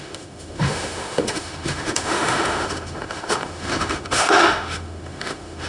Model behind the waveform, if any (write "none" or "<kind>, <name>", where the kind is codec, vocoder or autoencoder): autoencoder, DAC-VAE